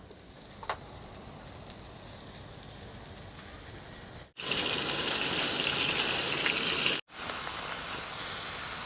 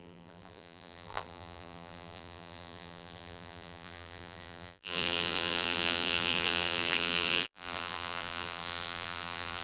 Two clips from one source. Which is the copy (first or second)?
second